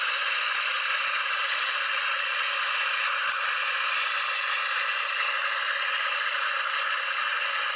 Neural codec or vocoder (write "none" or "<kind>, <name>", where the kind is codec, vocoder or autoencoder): none